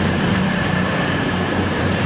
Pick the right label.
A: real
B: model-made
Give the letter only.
B